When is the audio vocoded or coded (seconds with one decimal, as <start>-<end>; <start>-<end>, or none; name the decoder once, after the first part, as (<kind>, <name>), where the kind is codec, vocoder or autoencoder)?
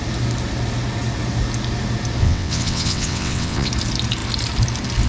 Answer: 2.2-3.7 (vocoder, WaveNeXt)